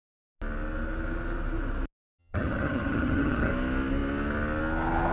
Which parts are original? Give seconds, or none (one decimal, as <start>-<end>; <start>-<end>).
0.0-2.2; 3.5-5.1